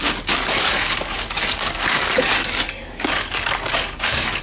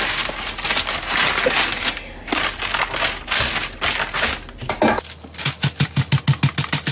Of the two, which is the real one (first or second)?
second